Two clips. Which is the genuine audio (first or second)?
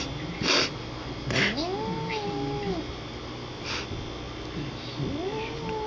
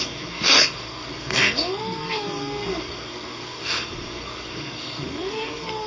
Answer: first